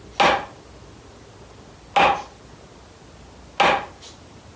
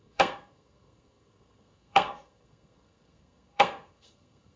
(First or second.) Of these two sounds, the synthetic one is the second